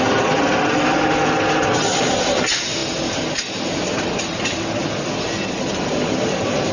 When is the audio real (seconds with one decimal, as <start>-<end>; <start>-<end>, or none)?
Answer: 0.0-6.7